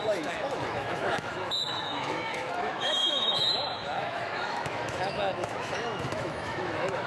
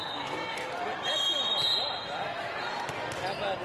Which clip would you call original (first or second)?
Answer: second